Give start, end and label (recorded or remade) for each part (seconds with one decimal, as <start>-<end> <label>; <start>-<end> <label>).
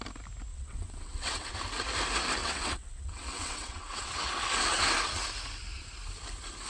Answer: 0.0-0.5 recorded; 0.5-1.5 remade; 1.5-2.4 recorded; 2.4-4.3 remade; 4.3-6.7 recorded